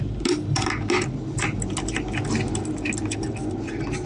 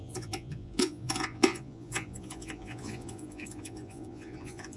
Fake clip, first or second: second